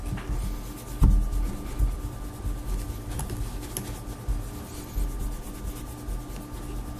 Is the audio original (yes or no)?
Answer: yes